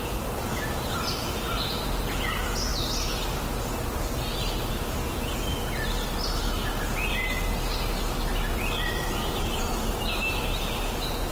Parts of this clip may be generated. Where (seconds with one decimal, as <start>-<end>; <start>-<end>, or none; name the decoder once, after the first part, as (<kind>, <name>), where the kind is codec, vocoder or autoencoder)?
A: none